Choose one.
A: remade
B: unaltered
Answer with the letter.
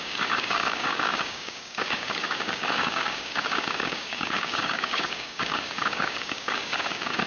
A